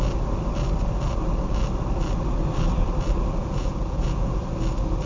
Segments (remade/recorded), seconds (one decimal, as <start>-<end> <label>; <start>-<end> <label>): 0.0-3.4 recorded; 3.4-4.4 remade; 4.4-5.1 recorded